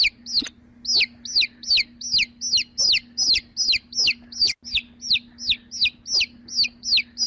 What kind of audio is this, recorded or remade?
recorded